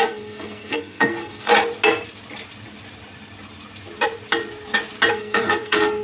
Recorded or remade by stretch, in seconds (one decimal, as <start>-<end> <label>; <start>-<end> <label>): 0.0-1.5 remade; 1.5-5.1 recorded; 5.1-6.0 remade